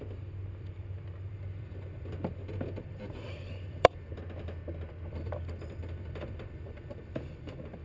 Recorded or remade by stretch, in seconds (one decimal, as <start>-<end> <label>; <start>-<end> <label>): 0.0-4.1 remade; 4.1-5.1 recorded; 5.1-7.8 remade